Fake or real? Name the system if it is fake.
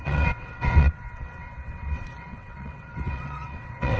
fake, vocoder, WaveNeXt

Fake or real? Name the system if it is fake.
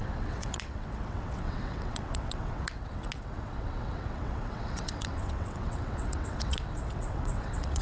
fake, vocoder, WaveNeXt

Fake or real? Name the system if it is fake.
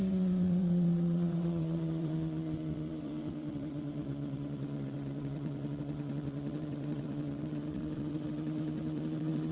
fake, vocoder, WaveNeXt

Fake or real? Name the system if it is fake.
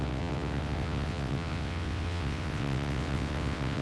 fake, vocoder, WaveNeXt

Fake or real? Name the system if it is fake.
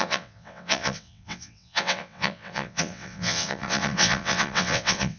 fake, vocoder, WaveNeXt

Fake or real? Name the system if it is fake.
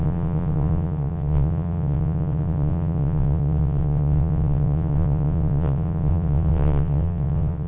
fake, vocoder, WaveNeXt